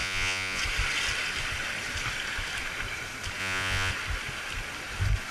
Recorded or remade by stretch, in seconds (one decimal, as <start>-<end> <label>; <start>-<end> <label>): 0.0-0.6 remade; 0.6-3.4 recorded; 3.4-3.9 remade; 3.9-5.3 recorded